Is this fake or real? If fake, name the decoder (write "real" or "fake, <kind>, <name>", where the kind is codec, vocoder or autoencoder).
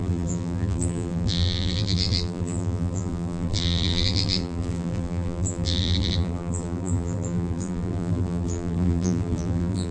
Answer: fake, vocoder, BigVGAN v2